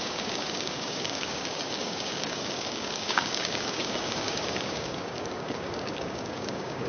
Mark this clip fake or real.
fake